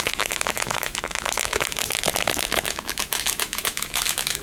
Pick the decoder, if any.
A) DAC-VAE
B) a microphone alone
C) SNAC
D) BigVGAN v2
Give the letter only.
A